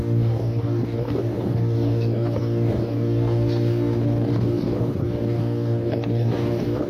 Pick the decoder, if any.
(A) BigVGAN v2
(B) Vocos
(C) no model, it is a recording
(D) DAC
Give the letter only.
D